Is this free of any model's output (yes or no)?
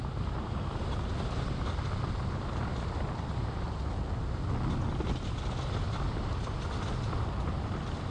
yes